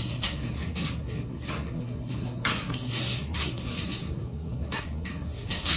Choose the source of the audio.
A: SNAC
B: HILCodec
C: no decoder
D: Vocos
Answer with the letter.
A